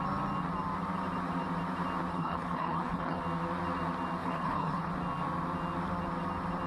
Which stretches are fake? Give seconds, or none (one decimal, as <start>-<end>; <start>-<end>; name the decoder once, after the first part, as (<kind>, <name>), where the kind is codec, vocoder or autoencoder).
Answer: 2.1-3.2 (codec, HILCodec); 4.2-4.9